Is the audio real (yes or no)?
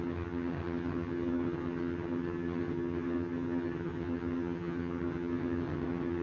no